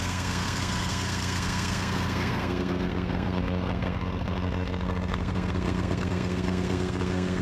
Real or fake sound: fake